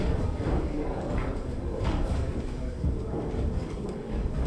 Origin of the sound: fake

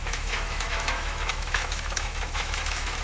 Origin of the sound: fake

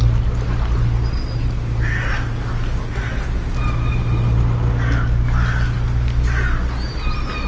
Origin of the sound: real